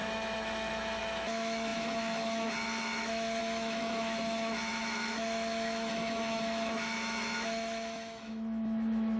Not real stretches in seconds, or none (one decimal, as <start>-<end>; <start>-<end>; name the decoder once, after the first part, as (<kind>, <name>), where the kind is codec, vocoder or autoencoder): 0.0-9.2 (autoencoder, DAC-VAE)